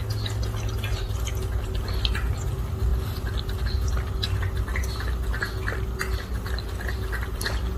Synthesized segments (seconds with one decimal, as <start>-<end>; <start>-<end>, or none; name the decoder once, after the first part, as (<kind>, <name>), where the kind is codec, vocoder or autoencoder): none